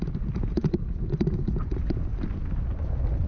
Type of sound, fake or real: real